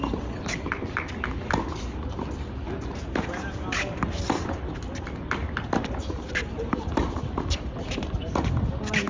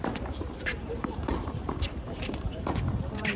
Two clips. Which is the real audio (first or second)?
first